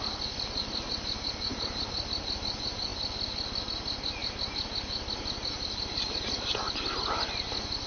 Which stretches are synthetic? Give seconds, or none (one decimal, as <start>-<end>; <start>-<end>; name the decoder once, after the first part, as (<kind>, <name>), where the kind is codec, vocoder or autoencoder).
none